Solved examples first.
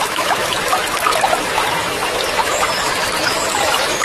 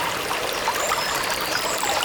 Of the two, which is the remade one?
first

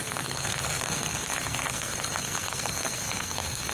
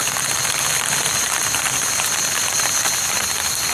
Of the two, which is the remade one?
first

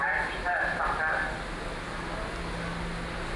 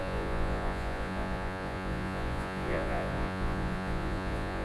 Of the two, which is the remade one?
second